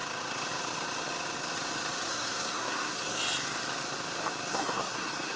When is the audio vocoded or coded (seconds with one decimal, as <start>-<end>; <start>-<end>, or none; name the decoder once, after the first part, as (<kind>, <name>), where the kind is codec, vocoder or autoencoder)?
2.1-3.2 (codec, SNAC); 4.5-5.4